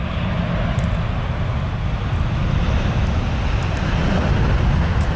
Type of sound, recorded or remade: recorded